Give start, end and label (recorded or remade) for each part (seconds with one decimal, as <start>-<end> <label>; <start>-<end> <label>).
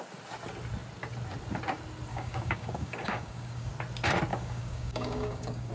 0.0-2.1 recorded; 2.1-3.7 remade; 3.7-4.3 recorded; 4.3-5.7 remade